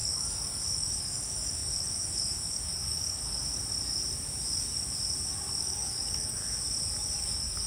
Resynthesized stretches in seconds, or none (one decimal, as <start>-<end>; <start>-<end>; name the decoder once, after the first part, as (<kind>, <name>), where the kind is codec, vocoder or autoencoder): 0.0-3.4 (codec, DAC); 5.6-6.4; 7.2-7.7